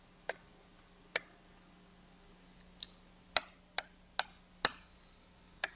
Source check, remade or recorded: recorded